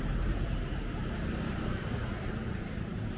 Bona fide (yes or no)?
no